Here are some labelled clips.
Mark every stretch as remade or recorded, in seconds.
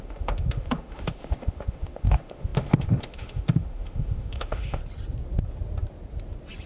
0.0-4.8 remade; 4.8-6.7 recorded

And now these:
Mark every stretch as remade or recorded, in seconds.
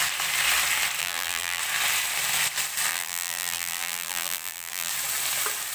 0.0-1.0 recorded; 1.0-1.6 remade; 1.6-2.9 recorded; 2.9-4.9 remade; 4.9-5.7 recorded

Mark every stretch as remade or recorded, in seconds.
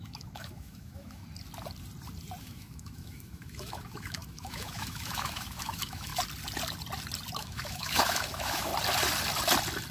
0.0-1.2 remade; 1.2-2.4 recorded; 2.4-6.1 remade; 6.1-7.4 recorded; 7.4-8.7 remade; 8.7-9.9 recorded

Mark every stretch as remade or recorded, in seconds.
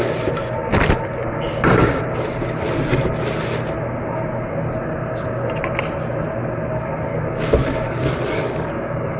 0.0-7.1 recorded; 7.1-9.2 remade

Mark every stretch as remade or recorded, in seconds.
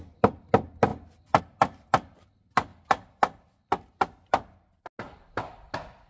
0.0-6.1 recorded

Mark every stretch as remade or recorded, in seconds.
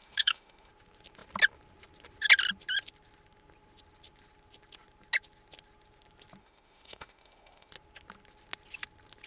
0.0-0.7 remade; 0.7-6.4 recorded; 6.4-7.7 remade; 7.7-9.3 recorded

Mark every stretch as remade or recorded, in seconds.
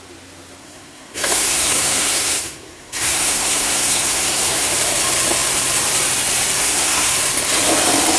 0.0-0.6 recorded; 0.6-4.7 remade; 4.7-6.6 recorded; 6.6-7.1 remade; 7.1-8.2 recorded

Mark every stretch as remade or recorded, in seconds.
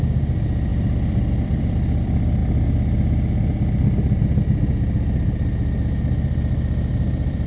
0.0-2.4 remade; 2.4-6.9 recorded; 6.9-7.5 remade